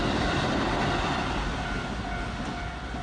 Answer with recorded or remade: recorded